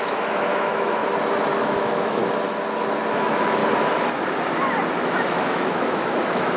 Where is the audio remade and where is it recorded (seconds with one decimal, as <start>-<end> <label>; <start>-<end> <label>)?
0.0-1.0 remade; 1.0-1.6 recorded; 1.6-2.2 remade; 2.2-3.1 recorded; 3.1-3.6 remade; 3.6-5.0 recorded; 5.0-6.6 remade